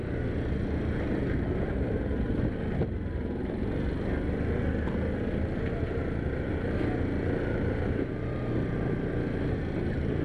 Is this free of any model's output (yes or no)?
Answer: yes